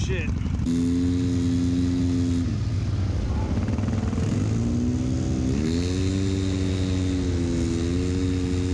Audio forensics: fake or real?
real